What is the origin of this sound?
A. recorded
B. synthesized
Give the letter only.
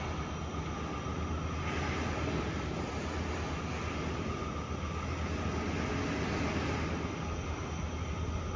A